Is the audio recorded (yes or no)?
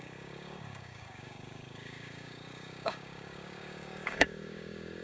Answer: no